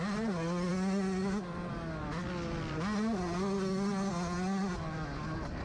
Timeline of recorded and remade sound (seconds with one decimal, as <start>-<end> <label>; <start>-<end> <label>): 0.0-5.6 recorded